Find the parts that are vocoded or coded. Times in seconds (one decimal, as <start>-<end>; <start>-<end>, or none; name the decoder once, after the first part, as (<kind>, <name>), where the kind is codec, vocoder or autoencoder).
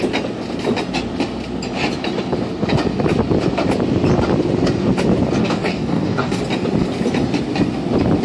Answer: 5.4-6.4 (codec, DAC)